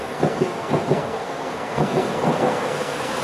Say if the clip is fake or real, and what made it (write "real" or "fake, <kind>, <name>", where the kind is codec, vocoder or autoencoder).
fake, codec, SNAC